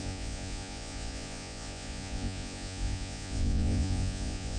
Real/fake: fake